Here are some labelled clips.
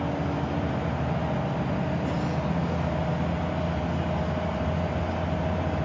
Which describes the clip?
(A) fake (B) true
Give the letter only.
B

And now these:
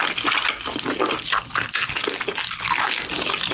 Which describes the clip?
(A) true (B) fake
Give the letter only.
A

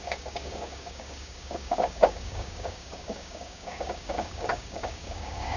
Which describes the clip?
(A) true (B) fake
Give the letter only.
B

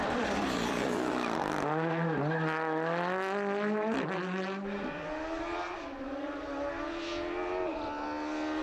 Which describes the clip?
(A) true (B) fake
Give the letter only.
A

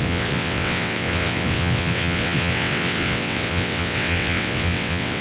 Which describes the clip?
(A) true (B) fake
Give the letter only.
B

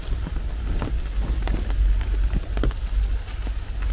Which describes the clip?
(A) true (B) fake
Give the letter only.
A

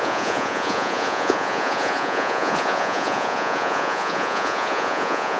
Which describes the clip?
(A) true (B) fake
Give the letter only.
B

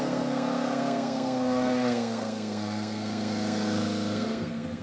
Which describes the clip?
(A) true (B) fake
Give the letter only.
B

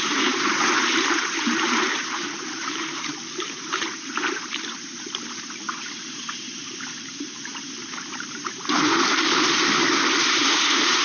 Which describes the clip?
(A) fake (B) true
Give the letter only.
A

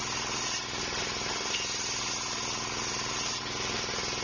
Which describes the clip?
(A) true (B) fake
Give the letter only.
A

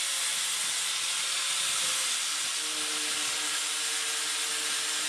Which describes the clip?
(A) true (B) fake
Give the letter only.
A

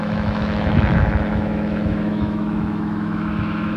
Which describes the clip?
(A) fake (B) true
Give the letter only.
A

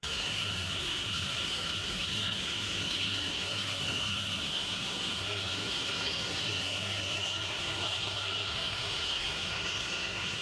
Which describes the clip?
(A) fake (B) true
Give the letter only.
A